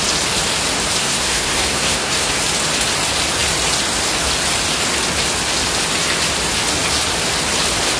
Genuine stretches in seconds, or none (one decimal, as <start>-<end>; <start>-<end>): 0.0-1.0; 2.3-8.0